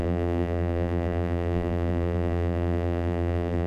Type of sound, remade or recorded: remade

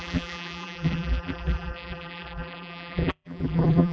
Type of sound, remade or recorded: remade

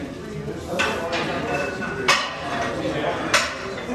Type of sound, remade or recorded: remade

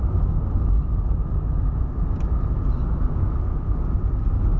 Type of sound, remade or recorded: recorded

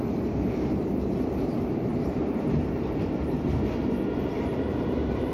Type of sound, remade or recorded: remade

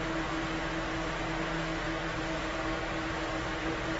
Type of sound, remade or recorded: recorded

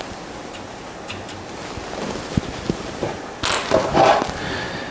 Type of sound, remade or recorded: recorded